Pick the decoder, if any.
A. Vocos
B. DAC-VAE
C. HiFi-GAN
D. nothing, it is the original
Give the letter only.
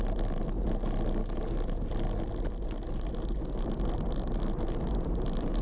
D